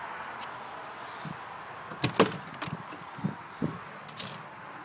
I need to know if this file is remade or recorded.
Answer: recorded